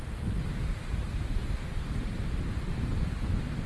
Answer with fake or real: real